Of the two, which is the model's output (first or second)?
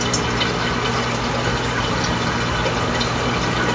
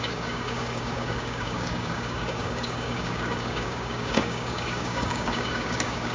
second